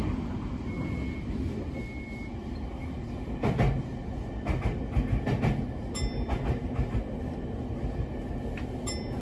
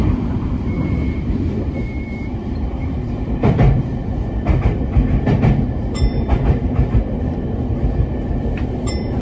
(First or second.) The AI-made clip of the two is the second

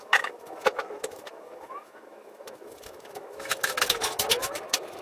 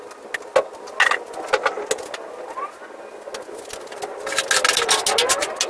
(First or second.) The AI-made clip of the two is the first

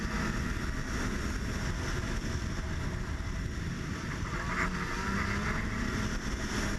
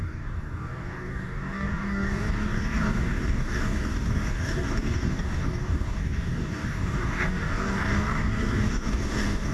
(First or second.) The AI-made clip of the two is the second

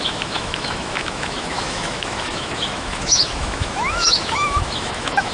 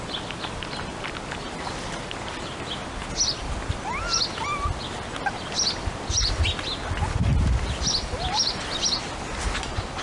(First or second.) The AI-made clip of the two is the first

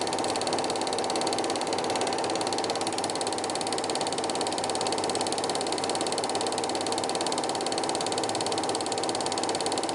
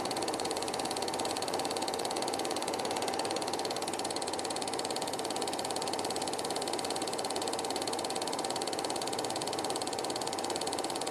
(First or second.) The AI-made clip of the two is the second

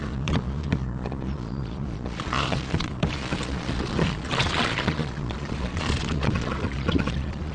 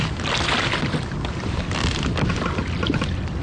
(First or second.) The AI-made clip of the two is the first